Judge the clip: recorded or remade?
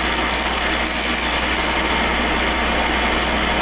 recorded